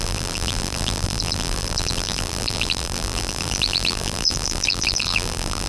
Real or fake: fake